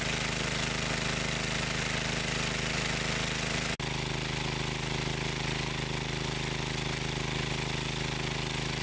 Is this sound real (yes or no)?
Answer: yes